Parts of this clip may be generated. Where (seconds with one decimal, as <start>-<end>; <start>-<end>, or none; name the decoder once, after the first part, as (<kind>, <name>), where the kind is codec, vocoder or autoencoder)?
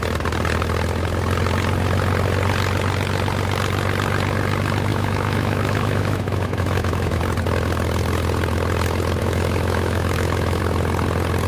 4.9-7.2 (autoencoder, DAC-VAE); 9.2-10.6